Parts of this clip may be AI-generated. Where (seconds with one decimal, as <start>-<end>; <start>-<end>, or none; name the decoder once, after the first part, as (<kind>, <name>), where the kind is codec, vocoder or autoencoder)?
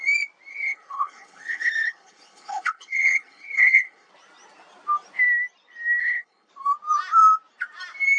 0.5-4.1 (codec, HILCodec); 6.0-6.5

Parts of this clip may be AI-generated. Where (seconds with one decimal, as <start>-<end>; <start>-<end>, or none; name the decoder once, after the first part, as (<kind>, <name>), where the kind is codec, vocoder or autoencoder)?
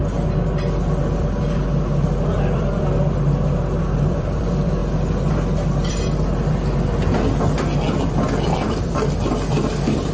none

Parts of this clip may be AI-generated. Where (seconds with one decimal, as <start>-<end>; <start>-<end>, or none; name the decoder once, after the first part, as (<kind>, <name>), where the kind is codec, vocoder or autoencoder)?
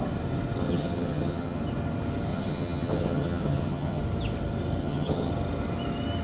0.6-1.6 (vocoder, HiFi-GAN); 2.3-4.0; 4.8-5.3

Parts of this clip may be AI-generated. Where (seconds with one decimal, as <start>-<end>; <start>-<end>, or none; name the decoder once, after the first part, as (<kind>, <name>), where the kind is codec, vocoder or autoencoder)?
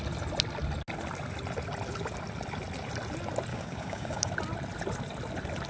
3.5-4.3 (codec, DAC)